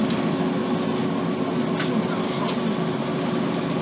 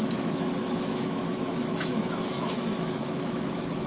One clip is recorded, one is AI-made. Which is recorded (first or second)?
first